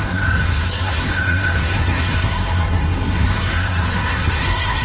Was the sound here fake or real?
fake